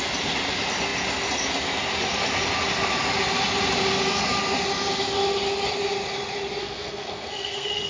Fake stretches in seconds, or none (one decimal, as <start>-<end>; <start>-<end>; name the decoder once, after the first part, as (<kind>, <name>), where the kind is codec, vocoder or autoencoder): 6.6-7.9 (codec, SNAC)

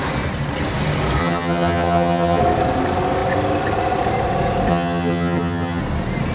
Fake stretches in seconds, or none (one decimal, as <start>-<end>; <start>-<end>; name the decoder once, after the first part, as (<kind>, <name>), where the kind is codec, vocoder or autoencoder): 1.2-2.4 (vocoder, HiFi-GAN); 4.7-5.8

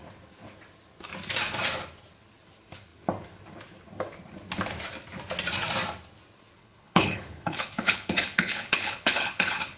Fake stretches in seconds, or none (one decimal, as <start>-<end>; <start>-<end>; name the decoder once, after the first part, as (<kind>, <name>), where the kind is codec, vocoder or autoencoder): 6.6-9.8 (codec, HILCodec)